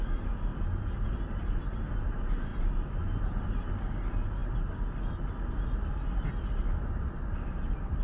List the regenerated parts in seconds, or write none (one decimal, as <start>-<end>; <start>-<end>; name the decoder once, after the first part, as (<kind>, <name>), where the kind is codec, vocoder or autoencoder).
none

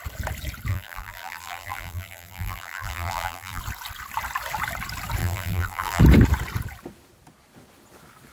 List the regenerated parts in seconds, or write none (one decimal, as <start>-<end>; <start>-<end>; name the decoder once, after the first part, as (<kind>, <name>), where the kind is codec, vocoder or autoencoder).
0.7-3.6 (vocoder, BigVGAN v2); 5.2-6.0

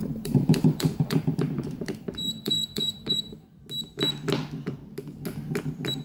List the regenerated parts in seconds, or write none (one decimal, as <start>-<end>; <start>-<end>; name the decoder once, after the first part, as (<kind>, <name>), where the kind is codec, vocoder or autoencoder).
0.0-3.6 (vocoder, BigVGAN v2)

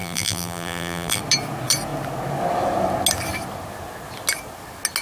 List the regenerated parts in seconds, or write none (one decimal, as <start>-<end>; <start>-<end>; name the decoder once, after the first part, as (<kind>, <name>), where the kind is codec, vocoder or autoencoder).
0.0-1.2 (vocoder, BigVGAN v2)

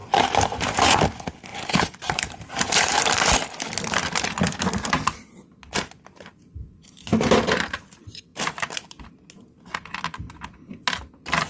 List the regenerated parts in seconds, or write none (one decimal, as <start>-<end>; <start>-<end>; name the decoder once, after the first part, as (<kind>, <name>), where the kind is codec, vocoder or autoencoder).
0.0-0.8 (vocoder, BigVGAN v2); 1.5-3.0; 7.1-7.8; 8.3-9.0

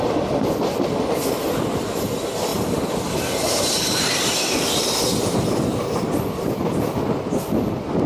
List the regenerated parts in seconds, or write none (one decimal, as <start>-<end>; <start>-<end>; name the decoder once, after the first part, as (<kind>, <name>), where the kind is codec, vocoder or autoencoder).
none